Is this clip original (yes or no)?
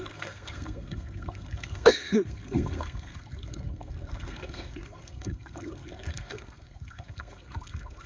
no